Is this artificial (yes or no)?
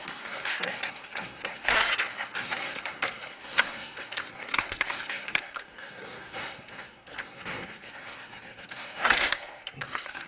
yes